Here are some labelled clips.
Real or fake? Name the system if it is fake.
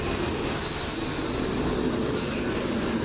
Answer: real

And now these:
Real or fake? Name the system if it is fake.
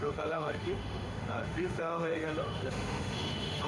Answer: fake, autoencoder, DAC-VAE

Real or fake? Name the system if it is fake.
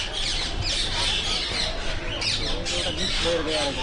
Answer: real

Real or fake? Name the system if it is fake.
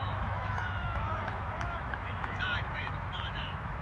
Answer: fake, autoencoder, DAC-VAE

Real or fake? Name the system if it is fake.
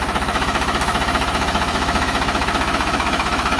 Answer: fake, autoencoder, DAC-VAE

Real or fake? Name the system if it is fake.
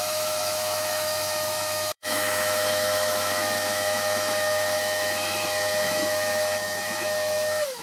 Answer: fake, autoencoder, DAC-VAE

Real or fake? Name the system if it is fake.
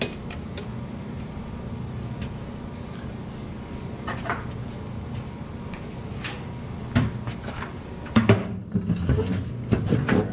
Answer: real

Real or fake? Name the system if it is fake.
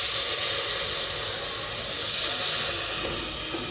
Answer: real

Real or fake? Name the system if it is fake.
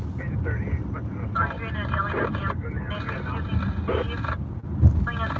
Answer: real